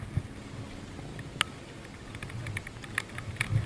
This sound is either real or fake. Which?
real